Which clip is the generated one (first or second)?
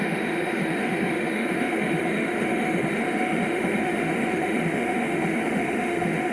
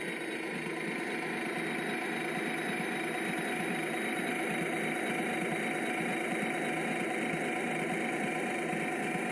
first